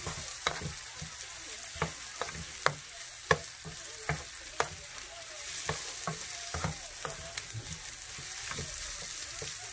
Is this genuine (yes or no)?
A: yes